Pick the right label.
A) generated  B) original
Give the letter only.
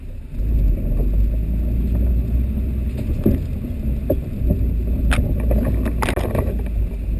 B